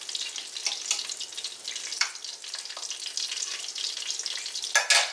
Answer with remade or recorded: recorded